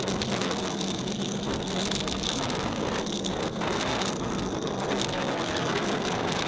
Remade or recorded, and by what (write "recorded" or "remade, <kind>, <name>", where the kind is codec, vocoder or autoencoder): remade, codec, SNAC